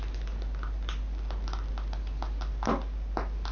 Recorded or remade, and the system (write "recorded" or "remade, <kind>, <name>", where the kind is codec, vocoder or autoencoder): recorded